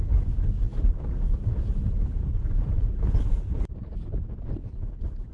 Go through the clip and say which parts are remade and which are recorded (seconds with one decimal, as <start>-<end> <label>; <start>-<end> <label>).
0.0-0.7 recorded; 0.7-3.8 remade; 3.8-5.3 recorded